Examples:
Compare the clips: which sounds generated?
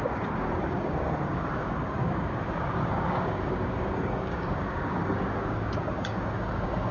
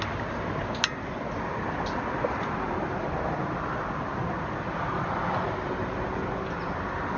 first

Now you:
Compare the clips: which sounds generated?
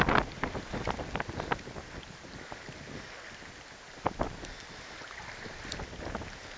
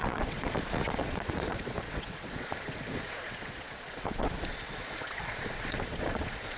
second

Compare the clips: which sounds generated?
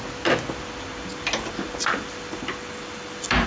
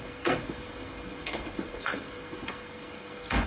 second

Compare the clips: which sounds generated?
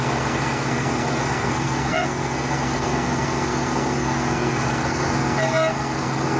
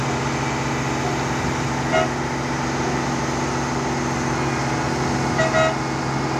first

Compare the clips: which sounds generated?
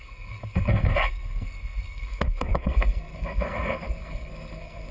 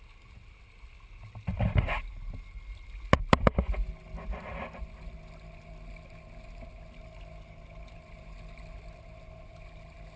first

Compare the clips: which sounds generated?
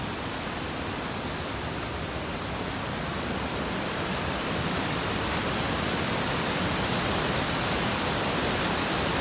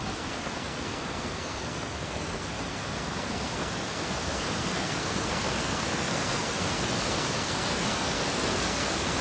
second